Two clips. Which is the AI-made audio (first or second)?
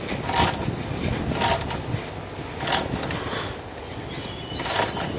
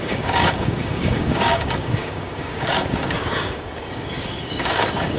second